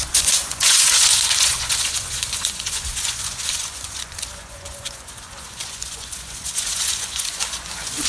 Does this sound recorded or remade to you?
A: remade